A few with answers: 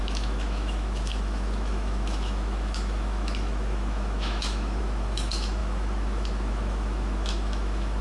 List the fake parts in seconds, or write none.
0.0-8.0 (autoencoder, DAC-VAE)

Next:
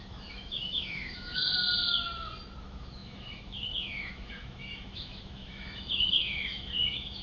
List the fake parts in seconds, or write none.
0.0-1.5 (autoencoder, DAC-VAE); 2.6-7.2

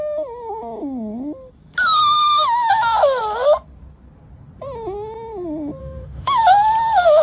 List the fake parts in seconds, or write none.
2.0-2.7 (autoencoder, DAC-VAE); 5.8-6.4

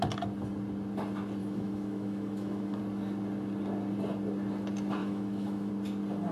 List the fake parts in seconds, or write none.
1.4-2.8 (autoencoder, DAC-VAE); 5.0-5.7